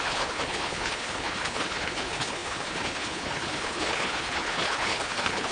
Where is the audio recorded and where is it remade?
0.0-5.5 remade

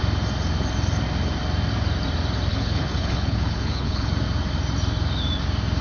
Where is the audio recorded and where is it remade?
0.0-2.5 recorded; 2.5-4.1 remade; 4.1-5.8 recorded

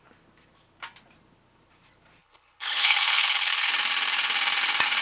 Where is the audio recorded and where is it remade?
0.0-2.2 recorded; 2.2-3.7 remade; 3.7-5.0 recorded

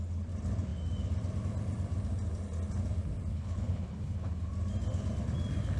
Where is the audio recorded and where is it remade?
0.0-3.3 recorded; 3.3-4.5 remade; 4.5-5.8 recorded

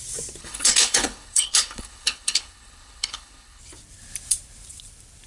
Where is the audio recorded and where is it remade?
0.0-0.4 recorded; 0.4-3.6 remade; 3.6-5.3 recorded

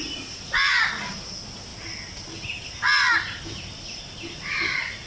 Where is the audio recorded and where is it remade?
0.0-5.1 recorded

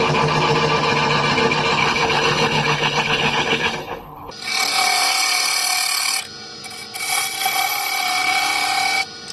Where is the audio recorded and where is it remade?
0.0-1.8 recorded; 1.8-4.3 remade; 4.3-9.3 recorded